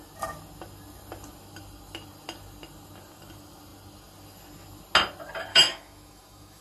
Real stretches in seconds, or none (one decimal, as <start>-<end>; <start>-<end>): 0.0-5.5

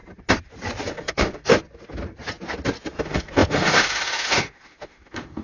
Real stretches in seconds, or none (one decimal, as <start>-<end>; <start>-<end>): 0.0-0.9; 1.5-3.0

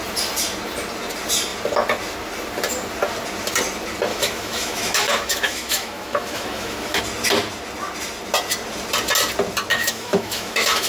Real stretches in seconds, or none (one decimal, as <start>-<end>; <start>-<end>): 0.0-4.1; 7.0-9.7

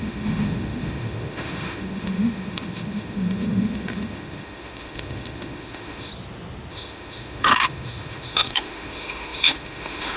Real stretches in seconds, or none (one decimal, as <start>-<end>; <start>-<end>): 6.1-6.7

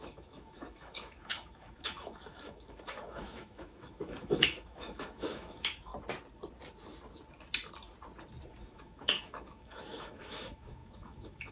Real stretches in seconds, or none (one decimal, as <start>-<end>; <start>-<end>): 5.9-8.6

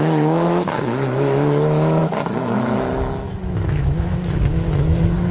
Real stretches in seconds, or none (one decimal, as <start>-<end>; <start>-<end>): none

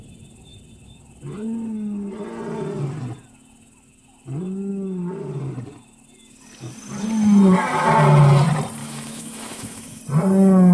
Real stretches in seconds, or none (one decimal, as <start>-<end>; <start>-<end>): 0.0-8.8; 10.0-10.7

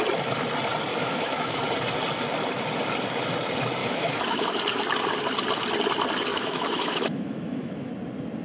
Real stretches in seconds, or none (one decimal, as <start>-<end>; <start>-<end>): 0.0-0.9; 1.6-3.8; 4.6-6.3; 7.9-8.4